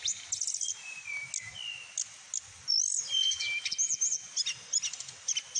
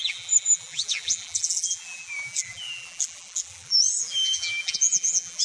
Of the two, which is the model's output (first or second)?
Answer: second